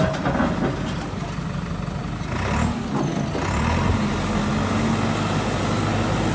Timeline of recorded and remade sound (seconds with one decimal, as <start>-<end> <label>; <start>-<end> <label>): 0.0-6.3 recorded